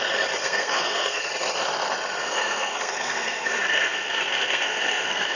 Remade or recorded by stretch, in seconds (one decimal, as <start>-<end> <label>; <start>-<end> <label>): 0.0-0.4 recorded; 0.4-1.3 remade; 1.3-2.2 recorded; 2.2-5.4 remade